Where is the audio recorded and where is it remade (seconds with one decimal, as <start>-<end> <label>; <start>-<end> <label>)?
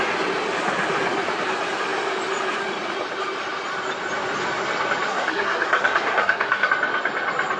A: 0.0-5.1 recorded; 5.1-6.7 remade; 6.7-7.6 recorded